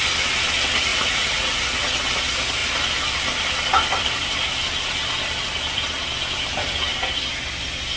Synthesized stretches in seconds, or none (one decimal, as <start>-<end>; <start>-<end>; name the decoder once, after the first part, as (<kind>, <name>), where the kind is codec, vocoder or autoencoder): 0.9-1.6 (vocoder, Vocos)